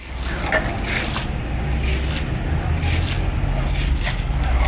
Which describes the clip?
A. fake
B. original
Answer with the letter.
B